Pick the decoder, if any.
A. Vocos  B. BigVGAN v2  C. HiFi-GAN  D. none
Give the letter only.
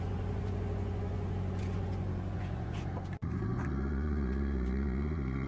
A